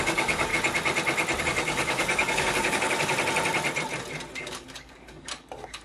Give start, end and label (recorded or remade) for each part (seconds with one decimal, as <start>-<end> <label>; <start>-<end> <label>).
0.0-0.5 remade; 0.5-1.4 recorded; 1.4-3.1 remade; 3.1-4.4 recorded; 4.4-5.8 remade